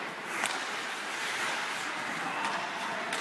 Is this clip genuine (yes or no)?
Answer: no